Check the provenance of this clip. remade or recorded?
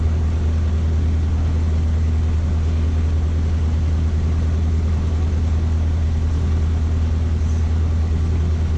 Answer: recorded